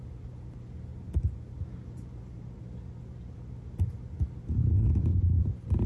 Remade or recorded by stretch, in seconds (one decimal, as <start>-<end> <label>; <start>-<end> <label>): 0.0-5.1 recorded; 5.1-5.9 remade